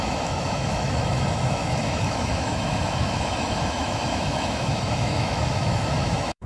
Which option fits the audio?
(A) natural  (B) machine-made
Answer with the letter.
B